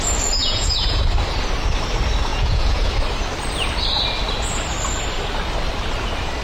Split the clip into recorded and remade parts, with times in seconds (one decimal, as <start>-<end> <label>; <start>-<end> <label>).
0.0-0.4 recorded; 0.4-1.0 remade; 1.0-2.3 recorded; 2.3-3.0 remade; 3.0-6.4 recorded